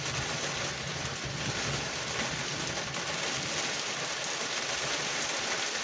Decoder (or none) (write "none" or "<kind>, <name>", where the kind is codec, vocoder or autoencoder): none